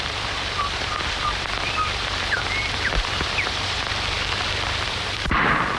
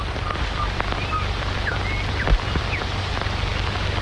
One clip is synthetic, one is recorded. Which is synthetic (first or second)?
first